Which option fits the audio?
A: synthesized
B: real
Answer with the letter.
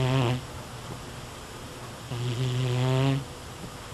B